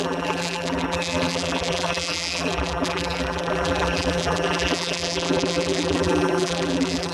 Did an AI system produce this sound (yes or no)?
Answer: yes